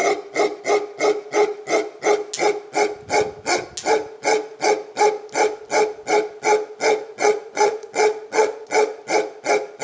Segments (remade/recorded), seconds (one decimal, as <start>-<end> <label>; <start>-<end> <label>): 0.0-7.0 recorded; 7.0-9.0 remade; 9.0-9.8 recorded